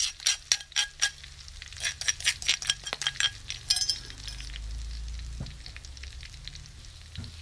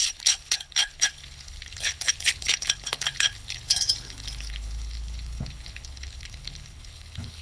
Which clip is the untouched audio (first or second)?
first